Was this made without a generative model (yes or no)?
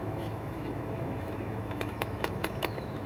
no